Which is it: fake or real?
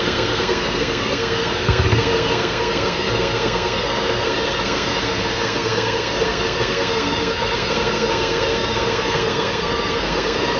fake